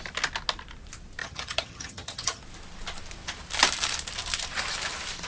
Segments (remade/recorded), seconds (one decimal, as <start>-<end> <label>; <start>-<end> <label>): 0.0-1.2 recorded; 1.2-2.4 remade; 2.4-5.3 recorded